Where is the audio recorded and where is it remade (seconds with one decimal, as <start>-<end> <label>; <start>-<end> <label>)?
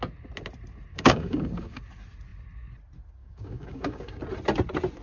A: 0.0-0.9 recorded; 0.9-1.8 remade; 1.8-3.2 recorded; 3.2-4.2 remade; 4.2-5.0 recorded